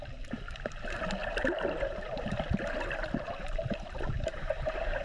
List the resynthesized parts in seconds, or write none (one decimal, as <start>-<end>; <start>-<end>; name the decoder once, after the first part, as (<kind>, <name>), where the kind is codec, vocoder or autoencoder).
1.2-2.6 (vocoder, BigVGAN v2); 3.4-5.0